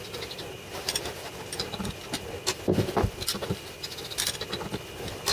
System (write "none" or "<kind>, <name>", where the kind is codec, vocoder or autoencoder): none